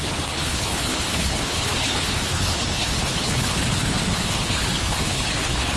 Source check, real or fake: fake